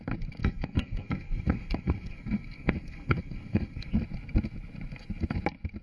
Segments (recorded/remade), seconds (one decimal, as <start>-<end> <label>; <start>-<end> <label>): 0.0-0.4 recorded; 0.4-3.9 remade; 3.9-5.8 recorded